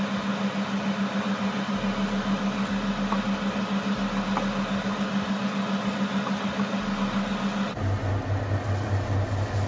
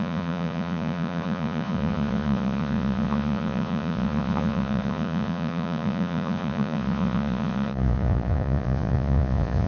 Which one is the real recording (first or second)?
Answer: first